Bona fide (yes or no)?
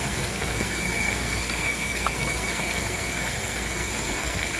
no